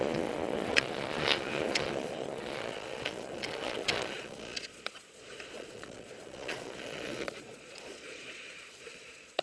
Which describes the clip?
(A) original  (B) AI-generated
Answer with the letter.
B